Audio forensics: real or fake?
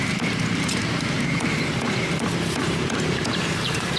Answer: fake